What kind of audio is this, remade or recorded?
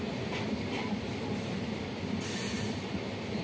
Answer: recorded